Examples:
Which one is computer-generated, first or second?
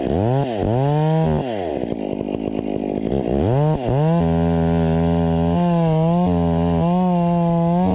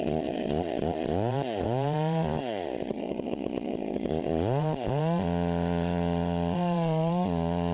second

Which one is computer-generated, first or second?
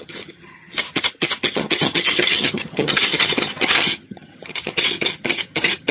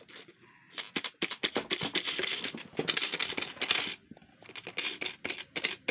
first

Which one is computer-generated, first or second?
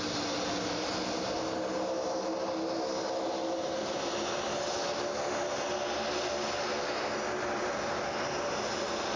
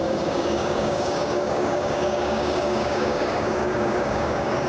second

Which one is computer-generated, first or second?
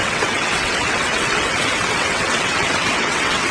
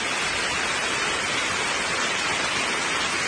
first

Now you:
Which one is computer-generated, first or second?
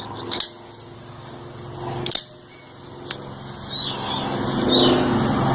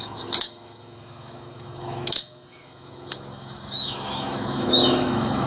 second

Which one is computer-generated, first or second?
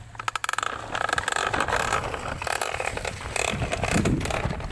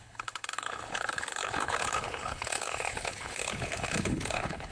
second